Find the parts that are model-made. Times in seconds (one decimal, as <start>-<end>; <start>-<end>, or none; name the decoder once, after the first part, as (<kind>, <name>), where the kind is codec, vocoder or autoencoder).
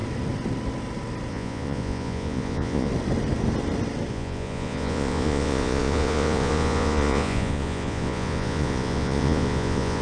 1.3-2.9 (vocoder, Vocos); 4.1-10.0